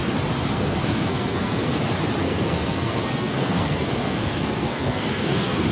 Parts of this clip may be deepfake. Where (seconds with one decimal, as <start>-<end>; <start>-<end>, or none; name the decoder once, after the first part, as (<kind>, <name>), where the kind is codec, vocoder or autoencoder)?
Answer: 0.5-1.8 (codec, SNAC); 2.2-5.7